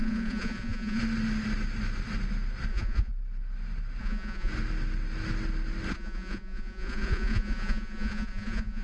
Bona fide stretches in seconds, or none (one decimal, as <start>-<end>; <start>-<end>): 1.0-2.7; 3.1-4.0; 4.5-5.9